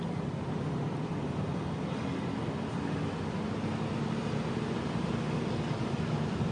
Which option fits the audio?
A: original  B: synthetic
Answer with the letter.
A